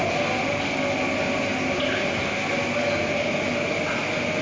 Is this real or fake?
real